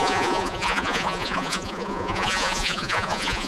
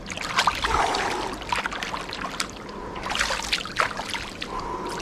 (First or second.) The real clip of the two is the second